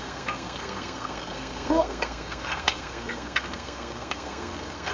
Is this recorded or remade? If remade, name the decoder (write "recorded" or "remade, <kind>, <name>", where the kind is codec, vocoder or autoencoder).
remade, codec, SNAC